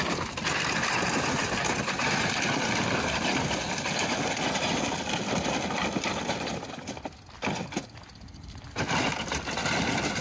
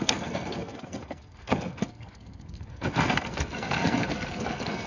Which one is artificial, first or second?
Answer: second